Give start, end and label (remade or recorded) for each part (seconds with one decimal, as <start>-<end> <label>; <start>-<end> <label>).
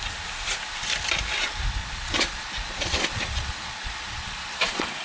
0.0-1.8 recorded; 1.8-5.0 remade